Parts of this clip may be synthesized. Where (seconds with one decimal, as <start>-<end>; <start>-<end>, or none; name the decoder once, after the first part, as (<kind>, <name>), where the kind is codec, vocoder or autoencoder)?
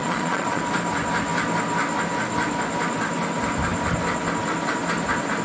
0.0-0.6 (vocoder, Vocos)